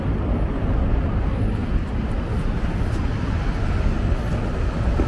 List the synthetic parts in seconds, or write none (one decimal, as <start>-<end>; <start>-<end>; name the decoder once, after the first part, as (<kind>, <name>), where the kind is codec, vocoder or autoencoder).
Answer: none

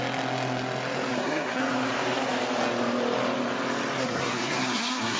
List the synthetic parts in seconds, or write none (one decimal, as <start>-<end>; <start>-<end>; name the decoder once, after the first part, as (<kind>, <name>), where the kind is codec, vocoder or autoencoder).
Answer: 1.1-1.6 (codec, SNAC); 4.0-5.2

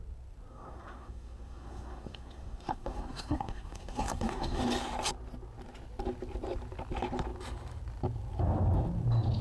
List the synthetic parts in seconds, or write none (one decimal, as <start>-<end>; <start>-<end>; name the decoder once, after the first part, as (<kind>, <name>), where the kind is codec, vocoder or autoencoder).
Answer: 0.5-4.6 (codec, SNAC)